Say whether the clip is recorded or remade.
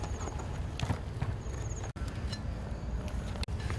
recorded